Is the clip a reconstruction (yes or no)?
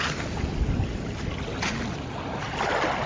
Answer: no